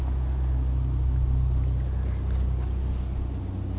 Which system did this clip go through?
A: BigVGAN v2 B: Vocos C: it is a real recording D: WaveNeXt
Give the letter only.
C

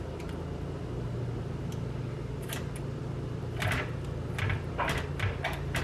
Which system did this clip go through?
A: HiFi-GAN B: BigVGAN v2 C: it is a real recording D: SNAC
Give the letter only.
C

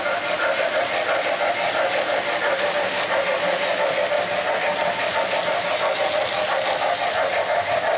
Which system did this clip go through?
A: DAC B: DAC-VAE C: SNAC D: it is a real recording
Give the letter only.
D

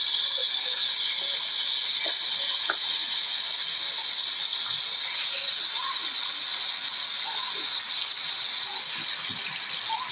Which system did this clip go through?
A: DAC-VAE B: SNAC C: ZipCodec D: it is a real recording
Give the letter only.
D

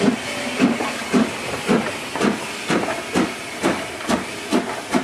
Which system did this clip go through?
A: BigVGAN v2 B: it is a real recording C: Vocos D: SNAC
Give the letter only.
B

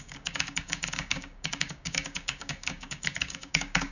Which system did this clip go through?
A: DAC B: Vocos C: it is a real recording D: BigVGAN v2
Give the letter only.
A